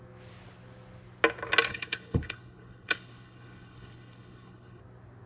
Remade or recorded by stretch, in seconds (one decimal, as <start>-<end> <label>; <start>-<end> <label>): 0.0-1.7 recorded; 1.7-4.8 remade; 4.8-5.3 recorded